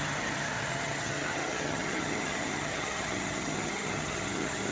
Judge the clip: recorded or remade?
remade